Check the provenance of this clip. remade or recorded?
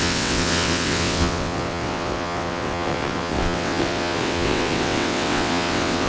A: remade